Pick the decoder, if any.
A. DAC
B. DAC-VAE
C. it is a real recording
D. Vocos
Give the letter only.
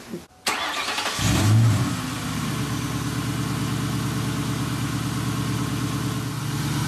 C